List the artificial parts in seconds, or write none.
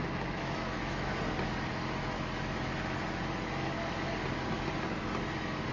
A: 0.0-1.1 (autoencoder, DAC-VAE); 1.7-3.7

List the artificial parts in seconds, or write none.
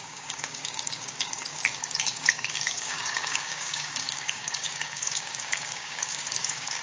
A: 0.0-6.8 (codec, DAC)